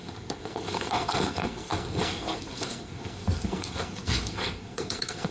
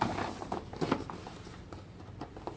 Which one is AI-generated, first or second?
first